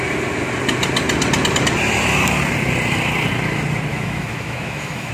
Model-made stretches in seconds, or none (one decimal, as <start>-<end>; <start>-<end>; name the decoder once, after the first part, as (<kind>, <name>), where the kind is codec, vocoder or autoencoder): 3.9-5.1 (autoencoder, DAC-VAE)